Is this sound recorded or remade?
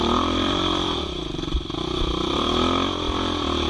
remade